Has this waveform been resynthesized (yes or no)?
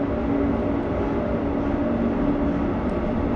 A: no